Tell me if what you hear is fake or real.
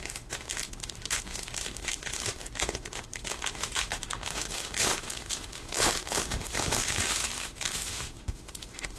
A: fake